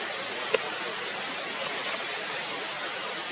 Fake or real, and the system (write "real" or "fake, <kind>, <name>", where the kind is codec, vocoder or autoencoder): real